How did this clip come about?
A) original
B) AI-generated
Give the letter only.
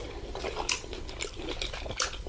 A